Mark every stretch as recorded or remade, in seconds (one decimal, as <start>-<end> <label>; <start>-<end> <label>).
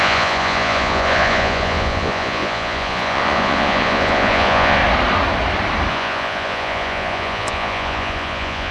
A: 0.0-4.8 remade; 4.8-5.9 recorded; 5.9-8.7 remade